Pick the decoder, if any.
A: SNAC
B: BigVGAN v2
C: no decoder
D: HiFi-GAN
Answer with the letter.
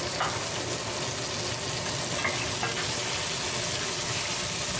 C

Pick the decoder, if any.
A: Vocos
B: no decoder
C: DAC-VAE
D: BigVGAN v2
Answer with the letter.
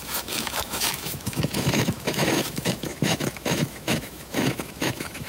C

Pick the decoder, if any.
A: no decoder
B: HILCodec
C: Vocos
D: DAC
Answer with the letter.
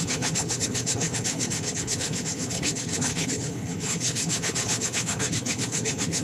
B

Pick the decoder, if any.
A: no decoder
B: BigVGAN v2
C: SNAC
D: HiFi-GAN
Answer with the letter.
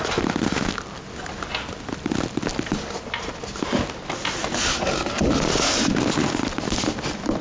A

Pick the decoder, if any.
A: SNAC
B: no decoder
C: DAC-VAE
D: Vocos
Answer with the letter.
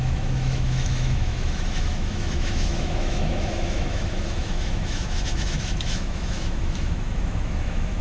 C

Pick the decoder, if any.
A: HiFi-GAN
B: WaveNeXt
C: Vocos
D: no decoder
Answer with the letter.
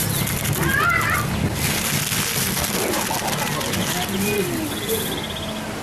D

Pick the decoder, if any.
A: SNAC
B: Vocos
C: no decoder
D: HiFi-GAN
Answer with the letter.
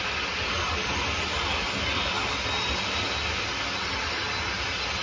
C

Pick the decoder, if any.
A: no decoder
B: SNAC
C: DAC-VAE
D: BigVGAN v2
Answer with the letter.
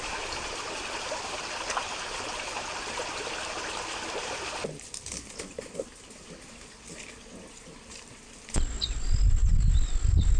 A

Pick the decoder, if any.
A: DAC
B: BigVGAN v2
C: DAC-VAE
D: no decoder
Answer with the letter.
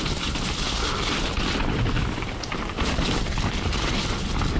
D